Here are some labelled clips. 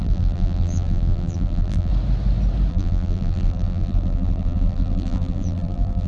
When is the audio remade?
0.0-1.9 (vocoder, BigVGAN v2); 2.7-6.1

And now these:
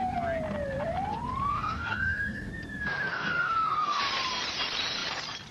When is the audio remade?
1.5-2.5 (codec, DAC); 3.1-4.0